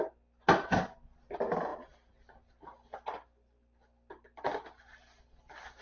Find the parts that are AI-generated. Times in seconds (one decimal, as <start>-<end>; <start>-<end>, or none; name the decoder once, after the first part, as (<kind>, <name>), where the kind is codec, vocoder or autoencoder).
none